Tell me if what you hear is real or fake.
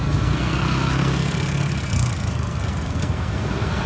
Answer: fake